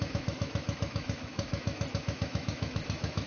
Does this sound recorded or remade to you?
remade